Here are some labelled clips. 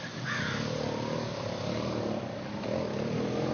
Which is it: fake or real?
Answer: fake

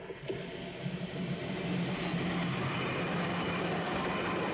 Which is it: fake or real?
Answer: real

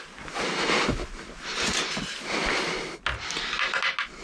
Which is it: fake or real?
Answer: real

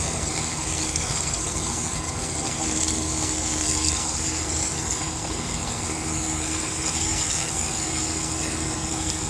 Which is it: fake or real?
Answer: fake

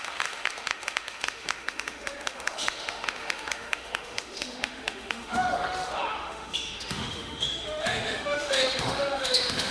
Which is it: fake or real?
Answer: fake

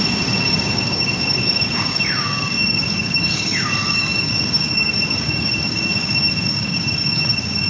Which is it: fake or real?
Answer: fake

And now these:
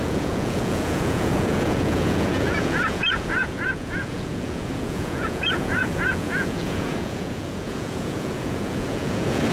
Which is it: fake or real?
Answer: fake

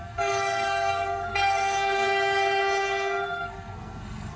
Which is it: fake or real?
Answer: fake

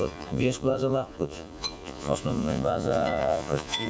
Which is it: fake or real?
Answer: fake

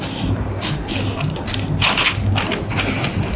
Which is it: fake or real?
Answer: real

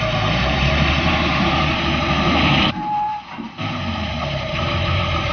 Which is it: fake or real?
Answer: fake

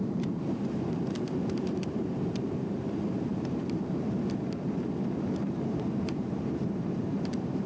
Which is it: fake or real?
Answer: fake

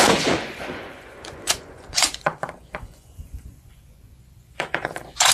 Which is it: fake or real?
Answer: fake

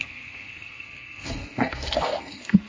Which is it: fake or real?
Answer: fake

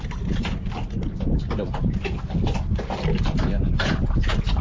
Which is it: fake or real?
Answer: real